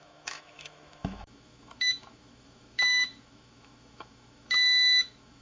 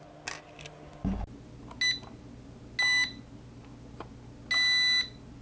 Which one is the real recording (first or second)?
second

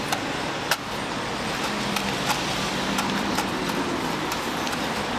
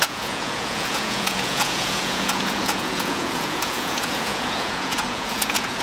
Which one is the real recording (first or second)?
first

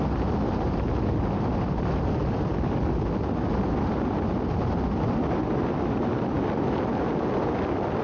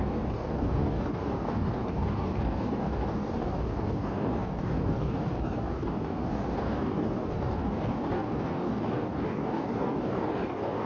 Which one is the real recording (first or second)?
first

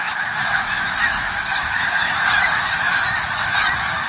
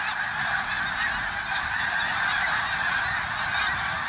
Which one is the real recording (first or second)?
second